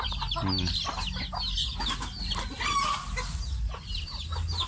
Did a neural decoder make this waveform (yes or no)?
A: no